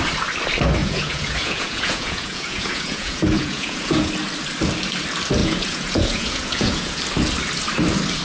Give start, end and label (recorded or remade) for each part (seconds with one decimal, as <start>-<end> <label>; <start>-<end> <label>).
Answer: 0.0-0.8 recorded; 0.8-4.1 remade; 4.1-5.4 recorded; 5.4-7.0 remade; 7.0-8.2 recorded